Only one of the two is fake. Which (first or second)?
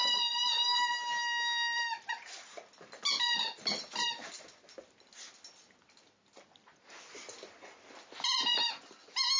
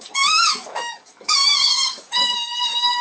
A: second